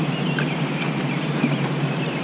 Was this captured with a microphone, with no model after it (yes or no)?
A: yes